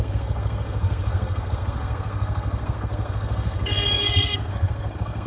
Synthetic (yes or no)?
yes